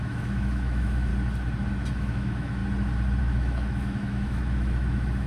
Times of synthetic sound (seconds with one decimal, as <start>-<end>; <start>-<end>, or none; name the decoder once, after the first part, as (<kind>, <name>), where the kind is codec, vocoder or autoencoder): 0.0-1.1 (autoencoder, DAC-VAE); 1.9-2.6; 3.2-5.3